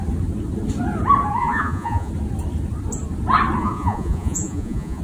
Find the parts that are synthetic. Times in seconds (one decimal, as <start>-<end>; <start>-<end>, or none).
1.4-2.1; 3.6-5.0